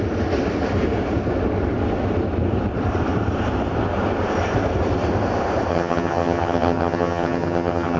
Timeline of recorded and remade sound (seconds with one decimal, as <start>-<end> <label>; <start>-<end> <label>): 0.0-5.7 recorded; 5.7-8.0 remade